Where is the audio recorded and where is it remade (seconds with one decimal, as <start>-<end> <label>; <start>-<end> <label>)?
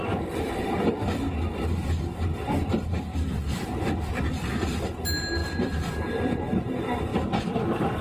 0.0-3.1 recorded; 3.1-4.5 remade; 4.5-5.4 recorded; 5.4-6.2 remade; 6.2-7.1 recorded; 7.1-8.0 remade